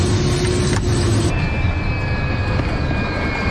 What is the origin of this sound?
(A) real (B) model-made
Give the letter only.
A